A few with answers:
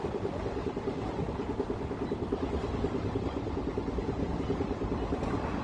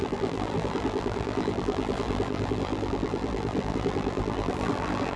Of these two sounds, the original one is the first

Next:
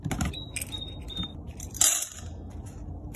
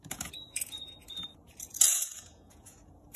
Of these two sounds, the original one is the first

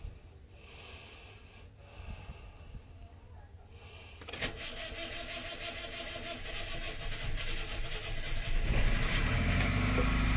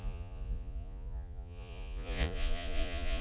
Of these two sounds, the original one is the first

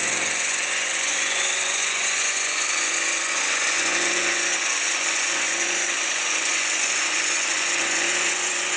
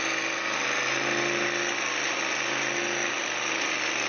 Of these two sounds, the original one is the second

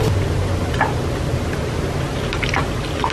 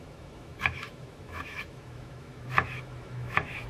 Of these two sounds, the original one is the first